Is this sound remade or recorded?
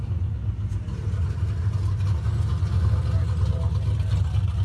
recorded